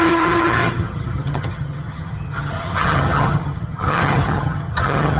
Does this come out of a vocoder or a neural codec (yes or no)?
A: yes